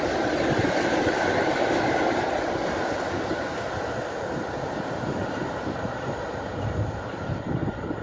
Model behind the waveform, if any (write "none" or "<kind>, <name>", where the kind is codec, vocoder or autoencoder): vocoder, BigVGAN v2